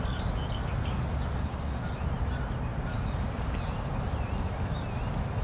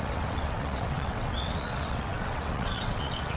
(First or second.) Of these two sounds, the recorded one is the first